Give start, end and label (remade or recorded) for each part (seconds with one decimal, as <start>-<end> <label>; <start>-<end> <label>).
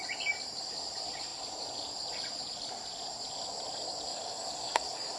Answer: 0.0-4.1 recorded; 4.1-5.2 remade